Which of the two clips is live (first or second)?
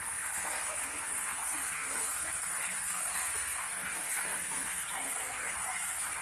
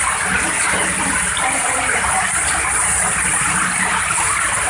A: second